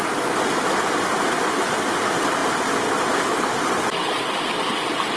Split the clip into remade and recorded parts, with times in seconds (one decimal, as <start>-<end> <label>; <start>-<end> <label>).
0.0-5.2 recorded